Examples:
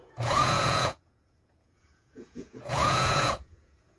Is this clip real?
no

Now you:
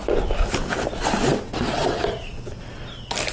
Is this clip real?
yes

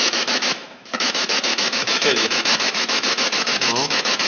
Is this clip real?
no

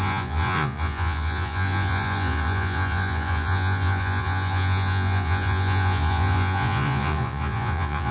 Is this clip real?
no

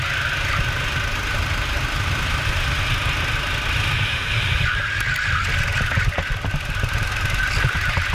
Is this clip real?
yes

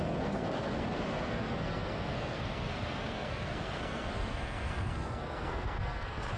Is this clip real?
no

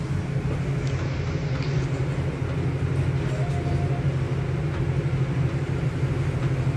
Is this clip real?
yes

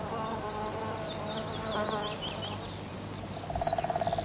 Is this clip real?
yes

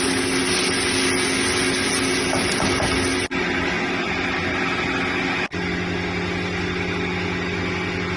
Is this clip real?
yes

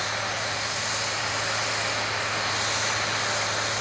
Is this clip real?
yes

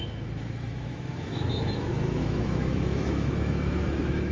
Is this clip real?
no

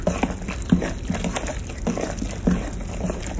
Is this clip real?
yes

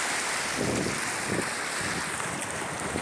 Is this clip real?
yes